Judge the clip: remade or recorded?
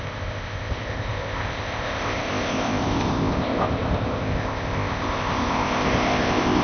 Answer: remade